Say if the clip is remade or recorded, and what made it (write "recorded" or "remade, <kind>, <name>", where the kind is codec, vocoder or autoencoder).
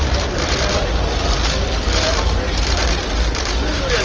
recorded